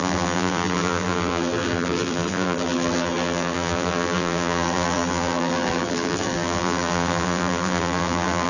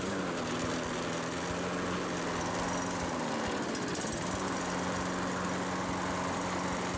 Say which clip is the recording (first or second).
second